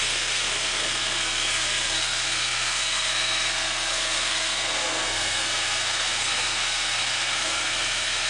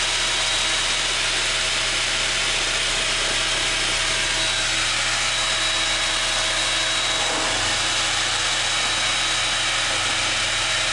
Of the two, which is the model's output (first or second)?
first